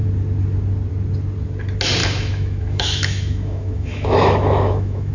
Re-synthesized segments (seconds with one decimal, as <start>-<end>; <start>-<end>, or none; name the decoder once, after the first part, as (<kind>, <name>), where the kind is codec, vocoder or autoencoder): 2.0-5.1 (autoencoder, DAC-VAE)